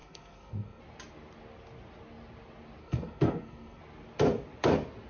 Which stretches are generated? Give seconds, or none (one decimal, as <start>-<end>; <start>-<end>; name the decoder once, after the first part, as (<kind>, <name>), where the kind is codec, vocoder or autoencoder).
0.0-0.8 (codec, SNAC); 2.8-3.8